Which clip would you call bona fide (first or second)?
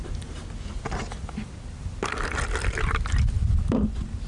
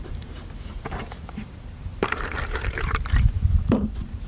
first